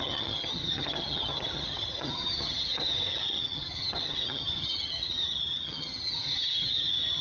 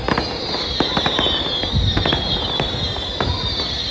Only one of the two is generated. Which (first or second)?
first